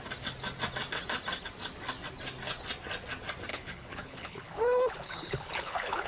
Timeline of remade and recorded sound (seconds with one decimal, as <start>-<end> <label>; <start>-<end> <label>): 0.0-3.5 recorded; 3.5-6.1 remade